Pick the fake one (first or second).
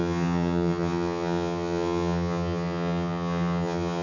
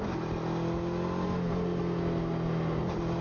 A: first